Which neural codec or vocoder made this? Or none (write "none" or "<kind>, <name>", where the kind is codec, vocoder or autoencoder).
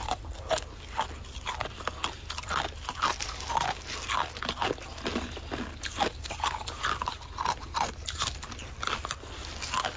none